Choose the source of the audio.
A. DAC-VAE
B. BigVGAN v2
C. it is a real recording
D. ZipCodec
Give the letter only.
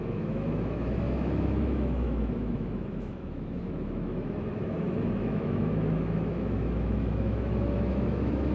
A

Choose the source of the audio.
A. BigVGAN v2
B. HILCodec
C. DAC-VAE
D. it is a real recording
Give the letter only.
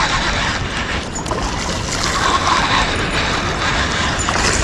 D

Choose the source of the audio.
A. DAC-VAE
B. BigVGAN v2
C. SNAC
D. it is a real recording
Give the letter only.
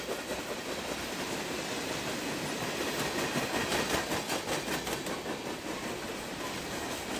D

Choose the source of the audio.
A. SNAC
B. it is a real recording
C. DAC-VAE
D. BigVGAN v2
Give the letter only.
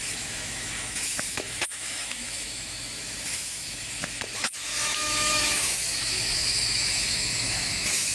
C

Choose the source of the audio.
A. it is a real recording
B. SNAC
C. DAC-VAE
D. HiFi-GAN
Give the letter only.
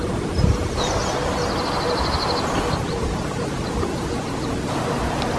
A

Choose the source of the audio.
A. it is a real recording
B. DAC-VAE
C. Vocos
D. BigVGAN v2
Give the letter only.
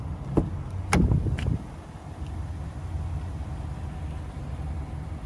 A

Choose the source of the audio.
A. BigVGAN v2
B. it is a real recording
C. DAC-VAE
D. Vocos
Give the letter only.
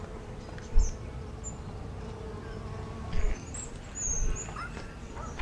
B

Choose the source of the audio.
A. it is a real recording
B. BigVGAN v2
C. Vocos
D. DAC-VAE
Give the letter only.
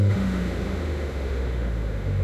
D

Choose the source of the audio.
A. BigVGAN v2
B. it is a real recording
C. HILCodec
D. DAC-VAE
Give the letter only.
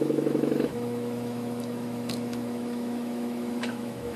D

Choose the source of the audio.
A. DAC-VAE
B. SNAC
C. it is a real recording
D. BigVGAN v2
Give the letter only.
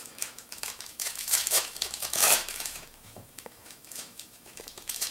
A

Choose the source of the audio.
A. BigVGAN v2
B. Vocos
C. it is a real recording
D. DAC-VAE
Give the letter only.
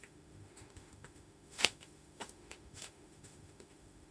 D